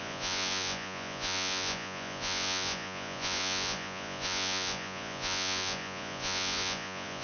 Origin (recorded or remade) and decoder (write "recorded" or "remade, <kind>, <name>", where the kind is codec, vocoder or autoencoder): remade, vocoder, Vocos